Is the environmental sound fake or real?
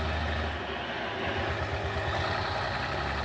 real